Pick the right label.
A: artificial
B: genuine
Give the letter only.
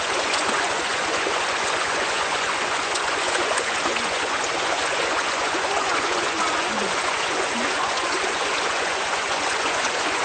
A